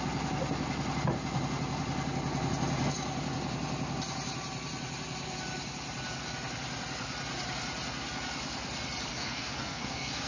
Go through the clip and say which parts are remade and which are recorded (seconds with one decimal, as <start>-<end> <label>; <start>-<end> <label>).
0.0-9.1 recorded; 9.1-10.3 remade

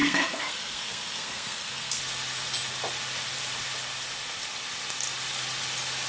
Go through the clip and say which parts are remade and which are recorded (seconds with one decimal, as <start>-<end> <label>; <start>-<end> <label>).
0.0-2.0 remade; 2.0-6.1 recorded